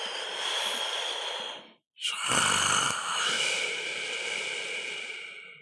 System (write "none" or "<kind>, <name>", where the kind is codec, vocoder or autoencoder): none